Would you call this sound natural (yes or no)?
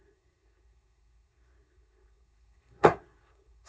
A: no